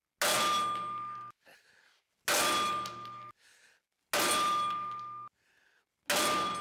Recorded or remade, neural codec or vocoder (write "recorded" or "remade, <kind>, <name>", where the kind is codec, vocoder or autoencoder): recorded